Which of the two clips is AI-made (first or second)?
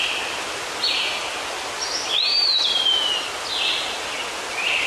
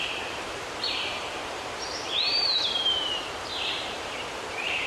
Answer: second